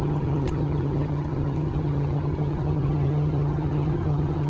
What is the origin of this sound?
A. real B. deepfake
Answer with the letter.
B